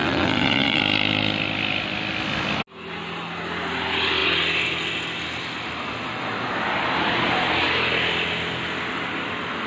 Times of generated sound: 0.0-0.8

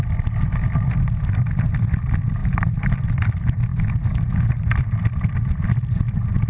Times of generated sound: none